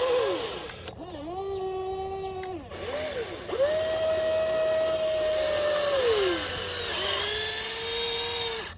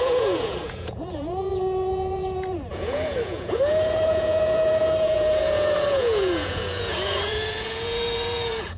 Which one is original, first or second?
first